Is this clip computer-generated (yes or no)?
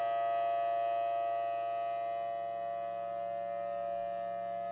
no